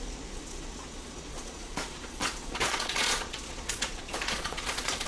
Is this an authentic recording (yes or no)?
no